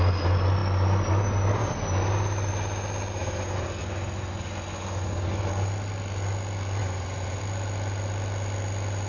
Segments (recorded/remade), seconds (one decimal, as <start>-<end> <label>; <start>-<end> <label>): 0.0-3.2 recorded; 3.2-5.4 remade; 5.4-6.8 recorded; 6.8-7.4 remade; 7.4-9.1 recorded